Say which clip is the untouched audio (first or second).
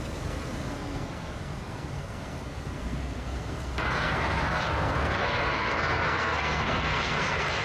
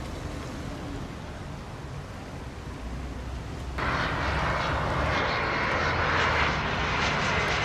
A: second